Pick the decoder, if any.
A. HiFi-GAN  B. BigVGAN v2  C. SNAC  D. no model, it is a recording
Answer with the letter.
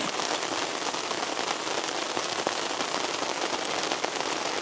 D